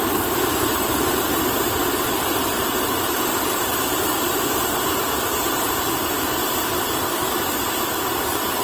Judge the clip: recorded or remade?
remade